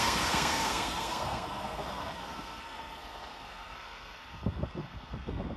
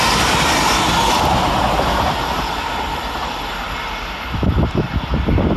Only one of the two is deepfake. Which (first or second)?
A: first